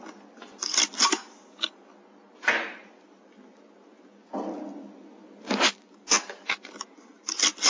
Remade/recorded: recorded